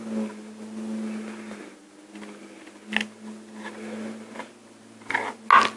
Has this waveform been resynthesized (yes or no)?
no